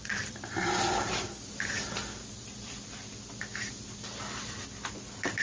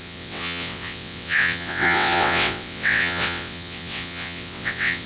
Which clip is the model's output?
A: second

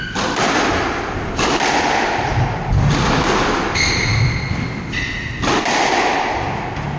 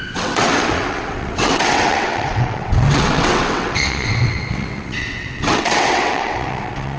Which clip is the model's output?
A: second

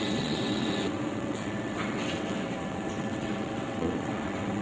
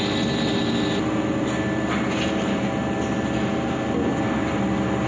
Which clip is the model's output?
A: first